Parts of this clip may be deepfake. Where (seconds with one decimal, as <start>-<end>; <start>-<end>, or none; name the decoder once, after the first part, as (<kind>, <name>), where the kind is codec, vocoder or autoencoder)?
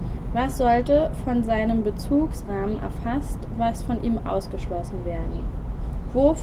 0.0-0.5 (autoencoder, DAC-VAE); 4.2-6.4